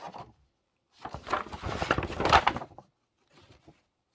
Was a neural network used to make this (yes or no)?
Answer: no